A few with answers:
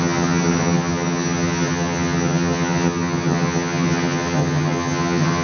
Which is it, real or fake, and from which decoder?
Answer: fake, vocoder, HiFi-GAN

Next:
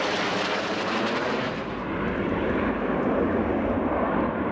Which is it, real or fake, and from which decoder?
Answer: real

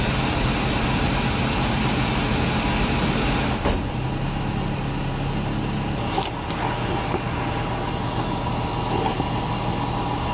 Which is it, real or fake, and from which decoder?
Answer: real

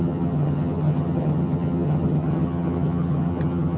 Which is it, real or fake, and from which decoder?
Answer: fake, vocoder, HiFi-GAN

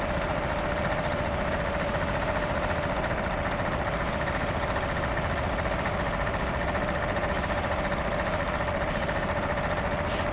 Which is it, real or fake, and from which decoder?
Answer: real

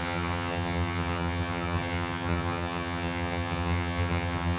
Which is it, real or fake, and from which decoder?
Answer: fake, vocoder, HiFi-GAN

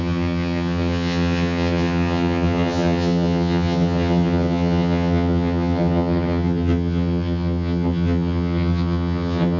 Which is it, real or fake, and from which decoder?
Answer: fake, vocoder, HiFi-GAN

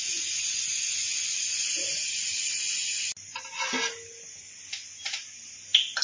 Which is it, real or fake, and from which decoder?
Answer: real